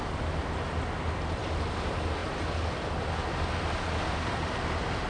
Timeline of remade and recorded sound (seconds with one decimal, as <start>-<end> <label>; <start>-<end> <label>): 0.0-5.1 recorded